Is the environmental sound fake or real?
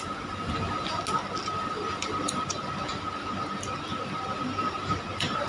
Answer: real